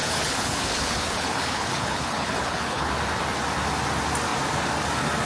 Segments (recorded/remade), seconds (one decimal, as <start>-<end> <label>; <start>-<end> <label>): 0.0-2.9 remade; 2.9-5.3 recorded